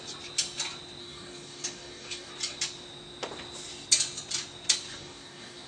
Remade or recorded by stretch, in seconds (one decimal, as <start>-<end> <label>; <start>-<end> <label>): 0.0-1.0 recorded; 1.0-2.3 remade; 2.3-4.9 recorded; 4.9-5.7 remade